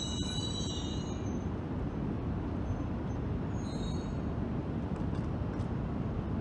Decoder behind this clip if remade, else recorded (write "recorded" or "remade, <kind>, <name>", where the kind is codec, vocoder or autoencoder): recorded